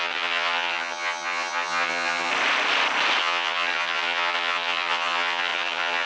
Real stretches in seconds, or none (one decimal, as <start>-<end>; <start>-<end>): 2.3-3.2